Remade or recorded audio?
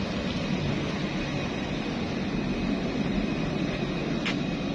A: recorded